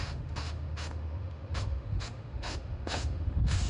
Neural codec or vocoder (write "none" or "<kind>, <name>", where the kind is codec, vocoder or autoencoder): autoencoder, DAC-VAE